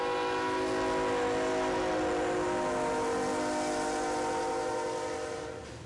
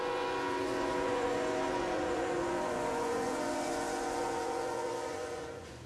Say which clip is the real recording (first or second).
first